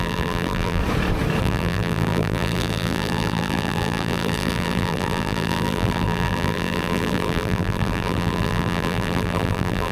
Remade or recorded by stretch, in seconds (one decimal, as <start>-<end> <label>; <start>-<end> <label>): 0.0-0.8 remade; 0.8-1.4 recorded; 1.4-9.9 remade